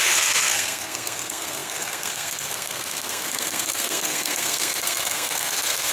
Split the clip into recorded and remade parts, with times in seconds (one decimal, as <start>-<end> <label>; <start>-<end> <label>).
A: 0.0-5.9 remade